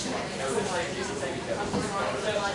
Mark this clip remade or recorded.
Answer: recorded